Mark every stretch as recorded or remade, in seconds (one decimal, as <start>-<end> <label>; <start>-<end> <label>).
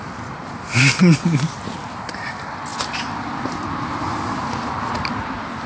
0.0-5.7 recorded